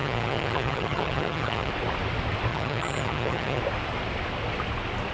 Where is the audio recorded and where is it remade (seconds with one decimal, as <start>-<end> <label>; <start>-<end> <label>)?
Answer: 0.0-1.7 remade; 1.7-2.5 recorded; 2.5-3.6 remade; 3.6-5.1 recorded